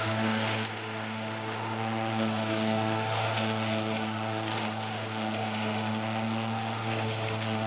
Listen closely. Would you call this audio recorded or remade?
remade